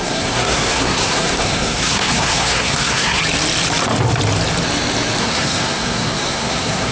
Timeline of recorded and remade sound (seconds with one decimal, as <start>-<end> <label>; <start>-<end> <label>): 0.0-3.2 remade; 3.2-5.2 recorded; 5.2-6.9 remade